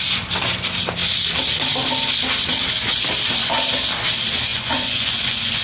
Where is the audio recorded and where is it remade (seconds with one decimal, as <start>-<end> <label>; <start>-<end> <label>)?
0.0-4.5 recorded; 4.5-5.6 remade